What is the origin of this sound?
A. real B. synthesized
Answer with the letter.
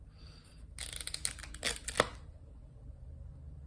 A